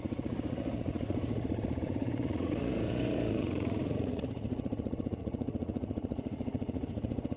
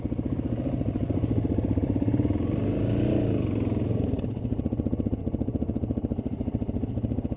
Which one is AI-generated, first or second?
first